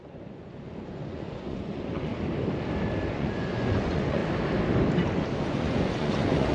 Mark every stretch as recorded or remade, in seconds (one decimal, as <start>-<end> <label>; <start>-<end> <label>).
0.0-2.1 remade; 2.1-3.1 recorded; 3.1-4.2 remade; 4.2-5.4 recorded; 5.4-6.5 remade